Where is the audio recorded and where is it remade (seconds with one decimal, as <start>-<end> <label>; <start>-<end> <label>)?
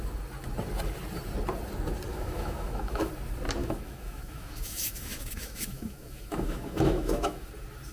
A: 0.0-2.1 recorded; 2.1-3.1 remade; 3.1-3.6 recorded; 3.6-7.5 remade; 7.5-7.9 recorded